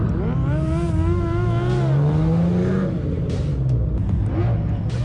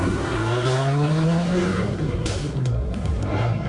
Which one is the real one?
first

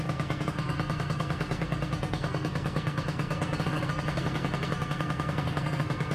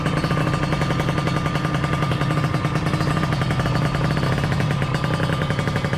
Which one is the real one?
second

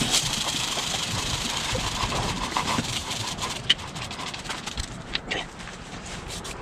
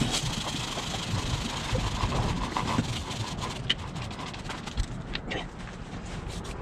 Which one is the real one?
second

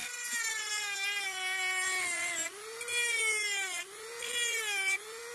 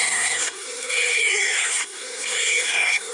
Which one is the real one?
first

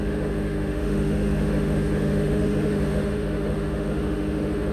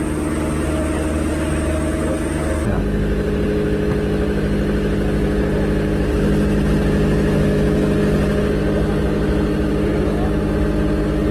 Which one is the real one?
second